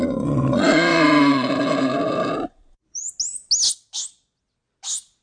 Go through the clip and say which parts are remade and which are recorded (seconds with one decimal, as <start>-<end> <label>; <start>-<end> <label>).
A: 0.0-0.9 recorded; 0.9-3.1 remade; 3.1-5.2 recorded